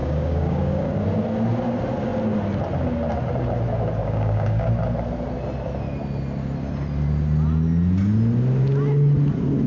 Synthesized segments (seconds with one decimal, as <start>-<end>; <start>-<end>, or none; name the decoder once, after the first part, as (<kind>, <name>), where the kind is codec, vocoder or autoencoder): 0.0-0.9 (codec, DAC); 4.0-4.7